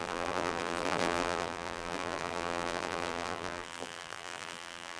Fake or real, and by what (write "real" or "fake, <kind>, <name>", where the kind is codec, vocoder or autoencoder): fake, vocoder, BigVGAN v2